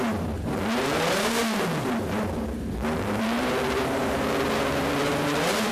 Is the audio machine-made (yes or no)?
yes